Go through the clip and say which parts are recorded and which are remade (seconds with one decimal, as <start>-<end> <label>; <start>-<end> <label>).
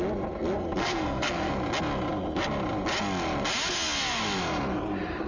0.0-0.8 recorded; 0.8-1.5 remade; 1.5-5.3 recorded